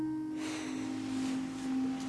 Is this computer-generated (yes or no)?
no